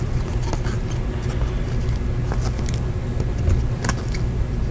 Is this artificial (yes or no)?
no